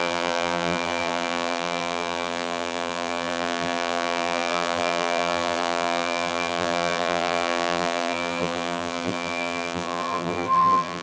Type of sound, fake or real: fake